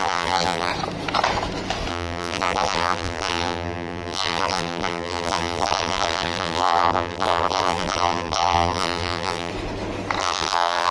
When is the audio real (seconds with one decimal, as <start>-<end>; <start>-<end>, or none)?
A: 0.7-1.9; 9.5-10.2

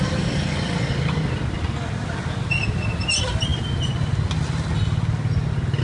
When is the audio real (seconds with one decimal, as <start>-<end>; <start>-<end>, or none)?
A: 0.0-5.8

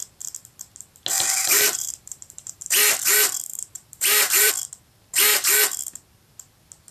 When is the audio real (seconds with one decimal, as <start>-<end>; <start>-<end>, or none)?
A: 0.0-1.4; 2.8-3.5; 4.5-6.9

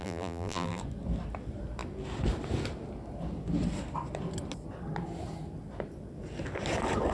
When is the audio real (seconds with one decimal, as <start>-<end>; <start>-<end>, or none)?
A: 0.8-7.1

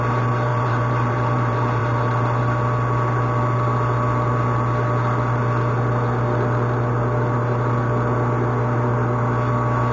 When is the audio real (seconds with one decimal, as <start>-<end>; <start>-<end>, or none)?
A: 0.0-0.5; 2.4-9.9

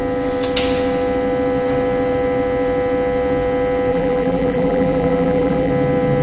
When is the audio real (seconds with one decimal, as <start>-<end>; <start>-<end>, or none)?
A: 0.0-3.9; 5.7-6.2

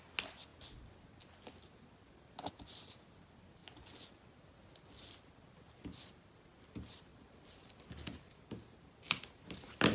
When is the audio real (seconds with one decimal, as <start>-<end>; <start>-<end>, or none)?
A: 0.0-7.1; 7.7-9.9